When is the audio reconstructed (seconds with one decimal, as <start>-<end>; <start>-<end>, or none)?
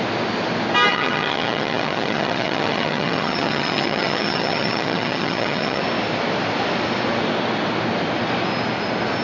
0.9-5.8